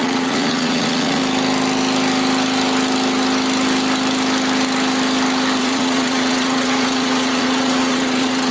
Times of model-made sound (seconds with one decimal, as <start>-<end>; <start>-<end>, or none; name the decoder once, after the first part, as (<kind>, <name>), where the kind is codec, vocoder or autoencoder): 0.0-1.2 (vocoder, Vocos); 5.6-8.5

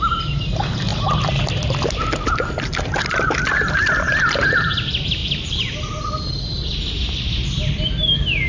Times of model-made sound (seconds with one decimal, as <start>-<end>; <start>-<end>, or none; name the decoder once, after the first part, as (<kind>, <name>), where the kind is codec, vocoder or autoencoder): none

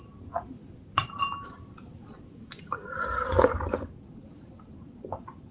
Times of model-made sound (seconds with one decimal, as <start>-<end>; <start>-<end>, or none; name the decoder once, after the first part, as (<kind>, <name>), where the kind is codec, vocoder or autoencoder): none